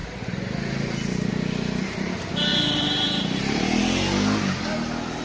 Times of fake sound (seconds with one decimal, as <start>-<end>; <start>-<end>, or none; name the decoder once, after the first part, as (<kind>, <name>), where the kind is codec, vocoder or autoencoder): 2.5-3.6 (vocoder, BigVGAN v2)